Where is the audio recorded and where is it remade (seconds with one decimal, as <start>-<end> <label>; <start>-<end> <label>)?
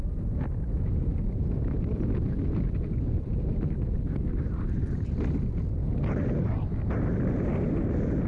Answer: 0.0-1.1 recorded; 1.1-5.4 remade; 5.4-8.3 recorded